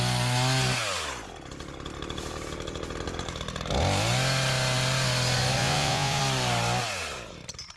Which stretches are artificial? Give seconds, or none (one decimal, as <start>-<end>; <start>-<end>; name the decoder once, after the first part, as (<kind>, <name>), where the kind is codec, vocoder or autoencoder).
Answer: 5.6-6.2 (vocoder, Vocos)